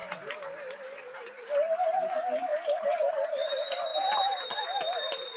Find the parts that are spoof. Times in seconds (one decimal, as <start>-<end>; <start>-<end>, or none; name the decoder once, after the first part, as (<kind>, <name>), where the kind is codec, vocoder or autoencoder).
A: 0.0-2.1 (vocoder, BigVGAN v2); 2.5-3.1; 3.9-4.6